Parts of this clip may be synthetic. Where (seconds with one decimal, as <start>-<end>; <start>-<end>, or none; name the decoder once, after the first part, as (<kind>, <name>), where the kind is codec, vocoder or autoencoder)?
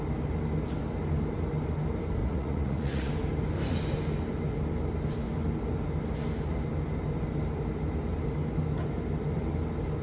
2.2-3.1 (vocoder, Vocos)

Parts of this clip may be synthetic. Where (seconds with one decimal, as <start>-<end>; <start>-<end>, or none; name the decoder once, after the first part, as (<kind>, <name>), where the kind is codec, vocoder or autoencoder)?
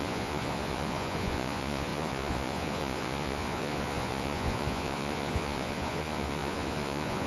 0.0-7.3 (vocoder, Vocos)